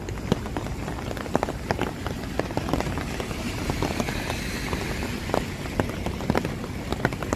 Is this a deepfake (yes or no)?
no